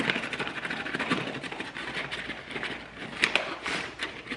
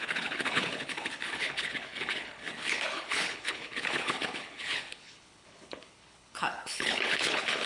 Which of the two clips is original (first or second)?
first